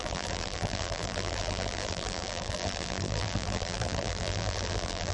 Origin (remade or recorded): remade